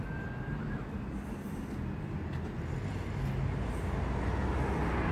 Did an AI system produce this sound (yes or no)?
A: no